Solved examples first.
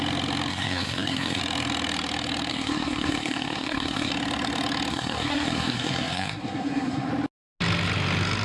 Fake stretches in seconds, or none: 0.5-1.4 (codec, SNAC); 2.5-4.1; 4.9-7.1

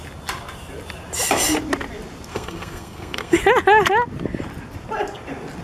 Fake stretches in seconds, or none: 2.3-3.4 (codec, SNAC)